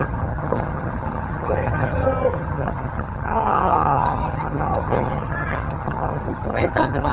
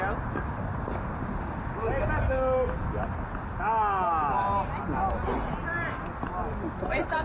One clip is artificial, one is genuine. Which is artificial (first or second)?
first